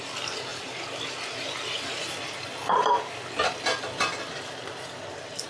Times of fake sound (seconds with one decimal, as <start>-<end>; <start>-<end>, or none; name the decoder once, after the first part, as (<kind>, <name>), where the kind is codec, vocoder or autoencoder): none